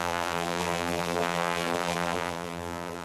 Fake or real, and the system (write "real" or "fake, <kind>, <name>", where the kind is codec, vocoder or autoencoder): fake, vocoder, BigVGAN v2